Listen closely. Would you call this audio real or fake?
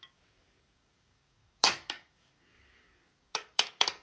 fake